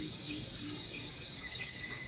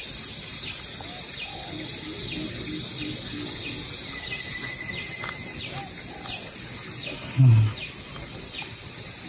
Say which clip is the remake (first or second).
first